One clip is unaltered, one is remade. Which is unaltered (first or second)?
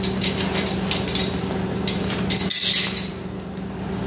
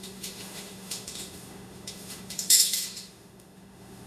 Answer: first